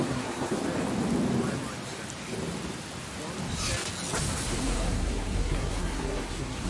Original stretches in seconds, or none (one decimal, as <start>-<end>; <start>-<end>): 0.6-4.6